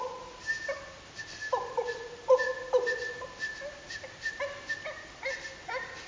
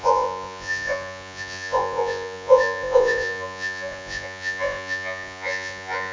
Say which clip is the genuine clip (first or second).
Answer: first